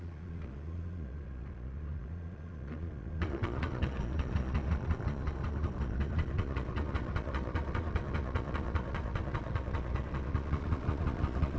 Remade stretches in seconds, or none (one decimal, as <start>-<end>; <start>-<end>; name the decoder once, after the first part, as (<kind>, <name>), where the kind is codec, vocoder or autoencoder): 0.0-11.6 (vocoder, Vocos)